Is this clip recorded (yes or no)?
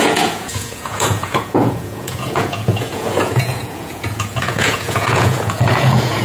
no